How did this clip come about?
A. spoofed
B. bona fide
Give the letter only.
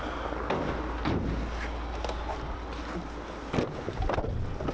B